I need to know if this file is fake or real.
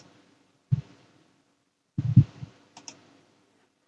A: real